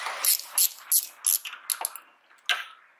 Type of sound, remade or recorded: recorded